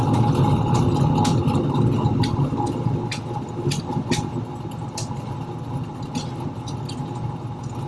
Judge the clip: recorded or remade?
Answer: recorded